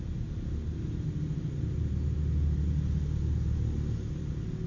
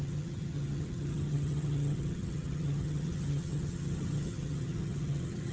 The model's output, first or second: second